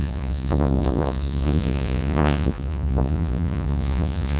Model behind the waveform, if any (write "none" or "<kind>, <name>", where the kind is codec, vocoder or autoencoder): vocoder, Vocos